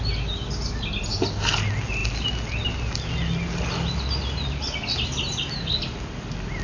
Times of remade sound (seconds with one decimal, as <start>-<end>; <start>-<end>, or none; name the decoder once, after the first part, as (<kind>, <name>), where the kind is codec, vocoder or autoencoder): none